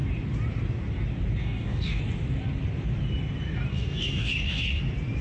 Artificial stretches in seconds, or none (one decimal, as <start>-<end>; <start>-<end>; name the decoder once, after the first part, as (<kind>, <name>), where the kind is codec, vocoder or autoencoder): 1.4-2.0 (codec, DAC); 3.7-4.8